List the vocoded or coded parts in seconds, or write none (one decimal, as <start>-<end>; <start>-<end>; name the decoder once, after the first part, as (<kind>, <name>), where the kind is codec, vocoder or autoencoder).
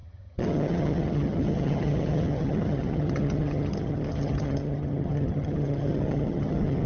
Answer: 0.0-6.9 (vocoder, HiFi-GAN)